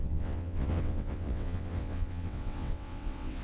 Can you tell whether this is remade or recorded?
remade